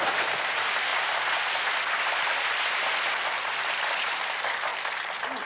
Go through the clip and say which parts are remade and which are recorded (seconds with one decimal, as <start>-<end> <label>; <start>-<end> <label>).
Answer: 0.0-5.4 recorded